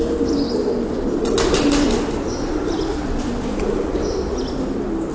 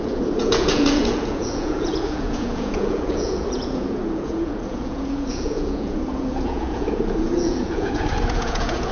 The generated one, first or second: second